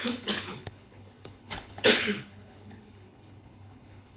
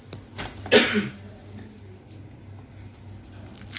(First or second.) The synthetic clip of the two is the first